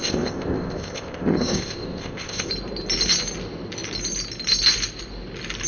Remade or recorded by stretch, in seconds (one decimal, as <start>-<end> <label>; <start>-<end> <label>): 0.0-2.5 remade; 2.5-5.7 recorded